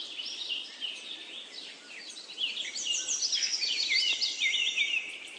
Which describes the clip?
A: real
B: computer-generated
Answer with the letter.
B